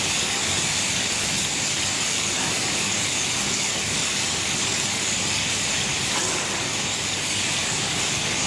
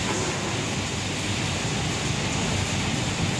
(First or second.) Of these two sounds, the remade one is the first